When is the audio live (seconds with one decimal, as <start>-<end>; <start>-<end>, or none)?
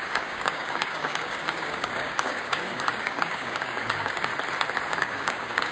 4.3-4.9